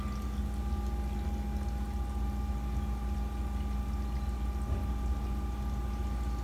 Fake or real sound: real